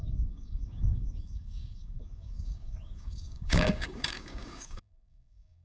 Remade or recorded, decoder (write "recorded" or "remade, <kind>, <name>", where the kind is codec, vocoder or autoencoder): remade, codec, DAC